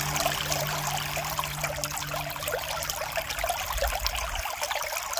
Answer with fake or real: real